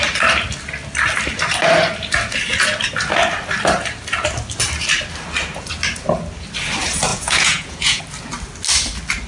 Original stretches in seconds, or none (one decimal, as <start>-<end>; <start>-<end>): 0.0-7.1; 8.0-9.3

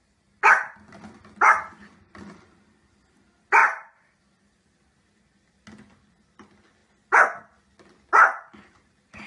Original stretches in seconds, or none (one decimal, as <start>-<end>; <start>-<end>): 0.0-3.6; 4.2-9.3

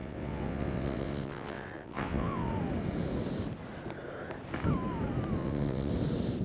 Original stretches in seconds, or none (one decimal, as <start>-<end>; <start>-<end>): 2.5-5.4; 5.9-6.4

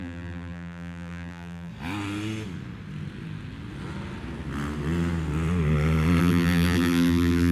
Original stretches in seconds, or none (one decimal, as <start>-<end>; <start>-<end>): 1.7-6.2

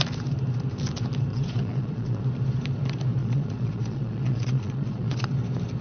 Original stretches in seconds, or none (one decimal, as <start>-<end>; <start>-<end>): 0.0-1.3; 2.2-3.2; 5.3-5.8

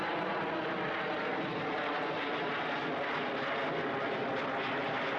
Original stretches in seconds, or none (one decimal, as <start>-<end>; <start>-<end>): 0.0-5.2

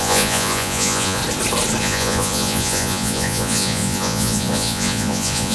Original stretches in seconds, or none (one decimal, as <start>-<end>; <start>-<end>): 1.2-1.8

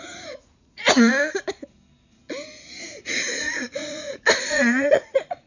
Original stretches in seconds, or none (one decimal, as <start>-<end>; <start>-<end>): 1.1-2.8